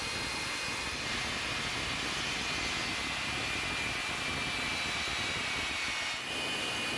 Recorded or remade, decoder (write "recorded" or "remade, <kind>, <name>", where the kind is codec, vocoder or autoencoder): recorded